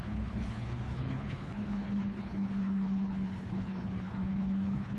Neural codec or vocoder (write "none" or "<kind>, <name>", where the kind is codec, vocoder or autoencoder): codec, HILCodec